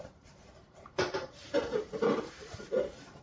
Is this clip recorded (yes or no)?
no